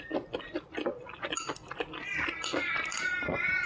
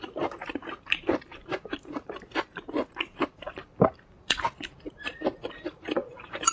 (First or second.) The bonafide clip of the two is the first